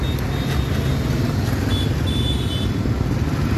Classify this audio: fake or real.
real